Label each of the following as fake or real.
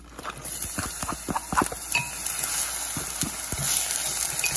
real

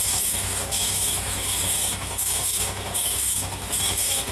fake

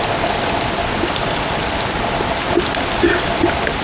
real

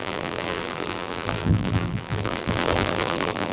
fake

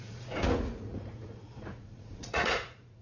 fake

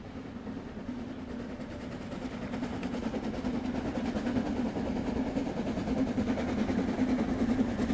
real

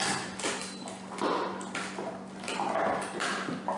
real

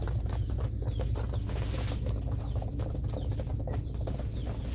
real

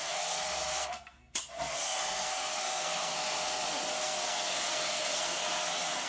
fake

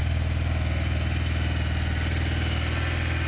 real